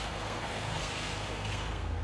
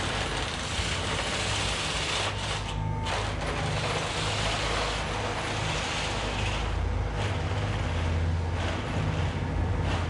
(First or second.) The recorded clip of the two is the second